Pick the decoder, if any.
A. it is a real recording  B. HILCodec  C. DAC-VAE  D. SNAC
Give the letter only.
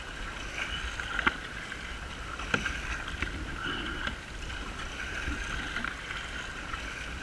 A